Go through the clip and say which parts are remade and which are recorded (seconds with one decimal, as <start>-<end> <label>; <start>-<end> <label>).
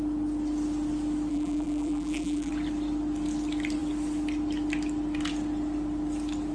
0.0-1.3 recorded; 1.3-2.5 remade; 2.5-6.5 recorded